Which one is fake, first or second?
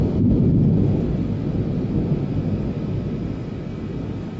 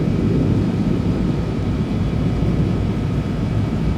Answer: second